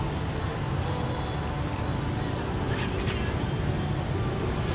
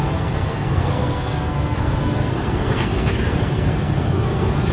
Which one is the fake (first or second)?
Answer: second